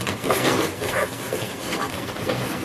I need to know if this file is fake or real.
fake